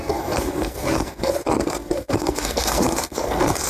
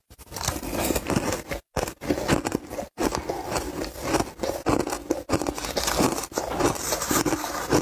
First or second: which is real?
second